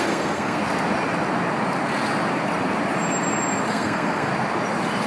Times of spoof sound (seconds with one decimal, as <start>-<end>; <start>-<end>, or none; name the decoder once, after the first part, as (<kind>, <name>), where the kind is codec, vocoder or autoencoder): 0.0-0.6 (codec, SNAC); 3.7-4.3